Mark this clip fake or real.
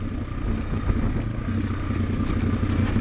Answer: real